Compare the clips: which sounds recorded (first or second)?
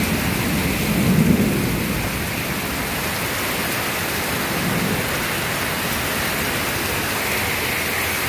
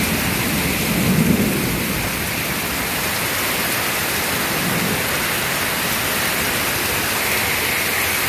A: first